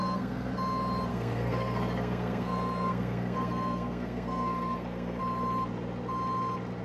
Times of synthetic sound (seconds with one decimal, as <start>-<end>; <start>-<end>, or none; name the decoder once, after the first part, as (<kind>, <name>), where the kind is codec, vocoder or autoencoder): 0.0-0.5 (codec, SNAC); 1.1-5.2